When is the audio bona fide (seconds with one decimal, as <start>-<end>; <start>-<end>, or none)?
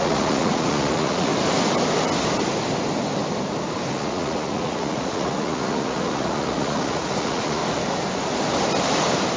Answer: 1.3-3.9; 7.6-9.4